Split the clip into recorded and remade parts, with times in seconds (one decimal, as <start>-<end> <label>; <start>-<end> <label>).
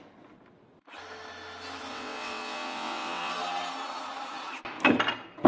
0.0-1.9 recorded; 1.9-3.3 remade; 3.3-5.5 recorded